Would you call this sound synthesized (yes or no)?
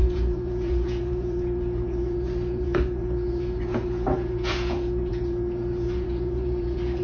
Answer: yes